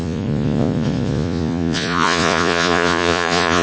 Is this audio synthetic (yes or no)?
yes